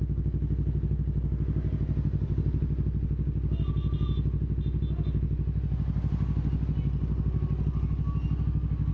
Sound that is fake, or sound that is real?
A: real